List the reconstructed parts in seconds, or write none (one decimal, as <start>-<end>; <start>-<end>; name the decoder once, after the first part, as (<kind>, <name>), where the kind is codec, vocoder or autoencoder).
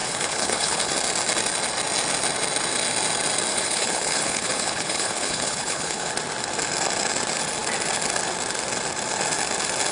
0.0-0.9 (codec, HILCodec); 3.5-6.1